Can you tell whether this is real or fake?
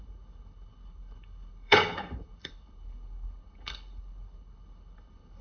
fake